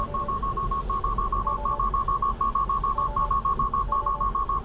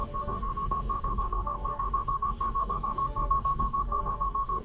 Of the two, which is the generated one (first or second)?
second